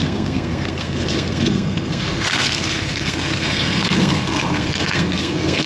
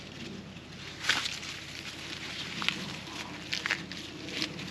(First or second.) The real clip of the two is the second